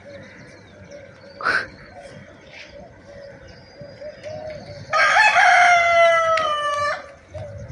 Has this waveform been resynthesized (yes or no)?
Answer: no